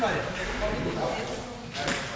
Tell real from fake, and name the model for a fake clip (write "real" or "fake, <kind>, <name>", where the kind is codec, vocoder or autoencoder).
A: real